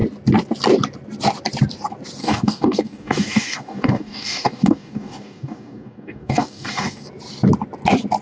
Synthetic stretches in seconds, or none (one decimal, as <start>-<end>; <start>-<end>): 2.2-7.1